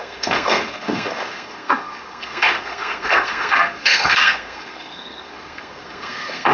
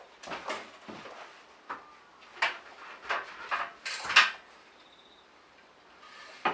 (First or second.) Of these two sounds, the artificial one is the first